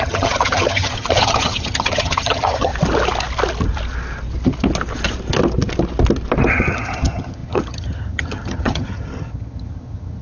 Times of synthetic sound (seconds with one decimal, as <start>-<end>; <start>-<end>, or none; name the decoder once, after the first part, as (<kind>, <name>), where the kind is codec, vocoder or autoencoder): 0.0-2.7 (vocoder, HiFi-GAN); 6.5-10.2

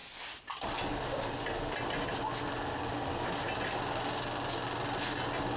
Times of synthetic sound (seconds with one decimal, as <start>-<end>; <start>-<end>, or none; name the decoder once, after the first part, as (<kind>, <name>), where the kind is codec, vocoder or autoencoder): none

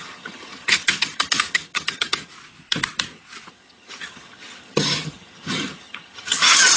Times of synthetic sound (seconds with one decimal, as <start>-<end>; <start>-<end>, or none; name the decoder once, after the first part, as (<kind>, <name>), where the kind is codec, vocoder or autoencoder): 0.0-2.3 (vocoder, HiFi-GAN); 3.5-6.8

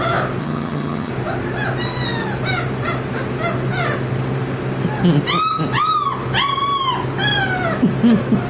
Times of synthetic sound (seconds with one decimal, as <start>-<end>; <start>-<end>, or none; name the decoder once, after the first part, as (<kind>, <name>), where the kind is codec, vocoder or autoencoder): 0.4-1.1 (vocoder, HiFi-GAN)

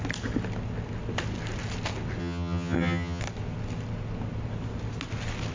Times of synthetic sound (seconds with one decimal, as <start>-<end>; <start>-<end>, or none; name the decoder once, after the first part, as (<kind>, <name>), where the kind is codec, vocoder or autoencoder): 2.2-3.2 (vocoder, HiFi-GAN)

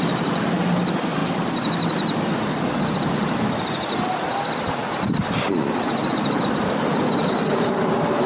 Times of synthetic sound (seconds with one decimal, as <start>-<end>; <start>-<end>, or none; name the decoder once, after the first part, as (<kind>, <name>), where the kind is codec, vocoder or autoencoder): none